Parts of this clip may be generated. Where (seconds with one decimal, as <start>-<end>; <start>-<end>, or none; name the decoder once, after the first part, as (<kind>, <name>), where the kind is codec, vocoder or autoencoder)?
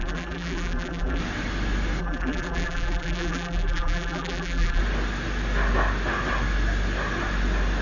0.0-1.2 (vocoder, BigVGAN v2); 2.0-4.8